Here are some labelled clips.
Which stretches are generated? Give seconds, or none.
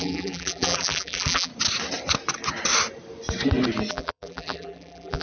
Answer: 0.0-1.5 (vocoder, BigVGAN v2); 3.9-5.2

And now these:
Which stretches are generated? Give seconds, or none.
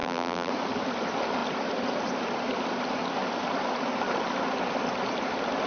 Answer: 0.0-0.5 (vocoder, BigVGAN v2)